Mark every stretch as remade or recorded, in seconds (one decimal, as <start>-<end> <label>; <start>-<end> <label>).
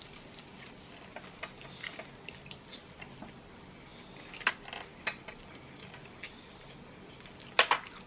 0.0-8.1 recorded